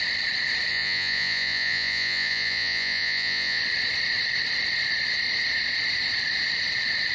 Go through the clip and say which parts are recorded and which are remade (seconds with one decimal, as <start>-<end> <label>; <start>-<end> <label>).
0.0-0.7 recorded; 0.7-3.6 remade; 3.6-7.1 recorded